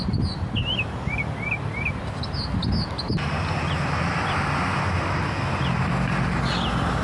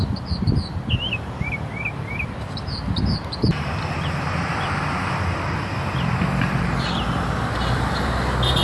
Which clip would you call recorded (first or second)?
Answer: first